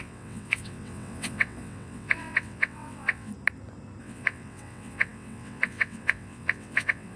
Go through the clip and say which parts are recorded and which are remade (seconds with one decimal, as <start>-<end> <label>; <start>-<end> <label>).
0.0-3.3 remade; 3.3-4.0 recorded; 4.0-7.2 remade